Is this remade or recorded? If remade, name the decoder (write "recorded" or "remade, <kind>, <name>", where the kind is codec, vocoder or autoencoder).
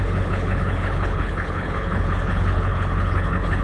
remade, codec, HILCodec